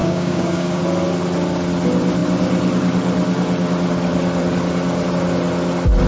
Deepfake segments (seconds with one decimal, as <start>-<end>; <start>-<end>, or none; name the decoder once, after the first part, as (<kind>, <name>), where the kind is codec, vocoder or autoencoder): 0.0-0.8 (codec, DAC)